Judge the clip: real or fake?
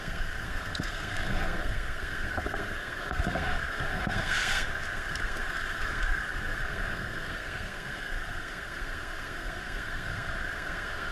fake